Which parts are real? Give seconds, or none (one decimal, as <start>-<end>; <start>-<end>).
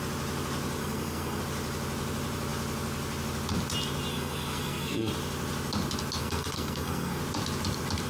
0.0-0.8; 1.4-4.1; 5.1-6.2; 7.2-8.1